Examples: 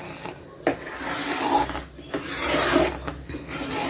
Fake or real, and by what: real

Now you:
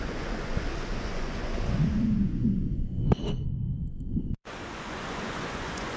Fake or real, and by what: fake, vocoder, Vocos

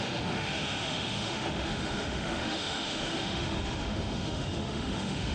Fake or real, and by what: fake, autoencoder, DAC-VAE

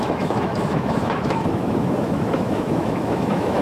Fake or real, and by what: fake, autoencoder, DAC-VAE